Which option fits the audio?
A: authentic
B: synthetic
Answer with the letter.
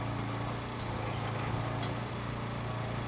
A